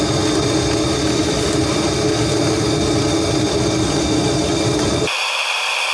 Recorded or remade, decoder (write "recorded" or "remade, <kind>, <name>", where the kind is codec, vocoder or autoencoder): recorded